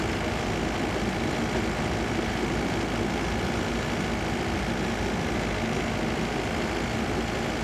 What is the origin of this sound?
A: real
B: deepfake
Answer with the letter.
A